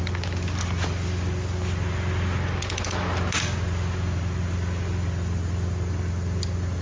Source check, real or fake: real